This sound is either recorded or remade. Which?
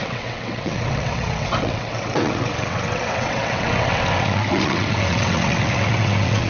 remade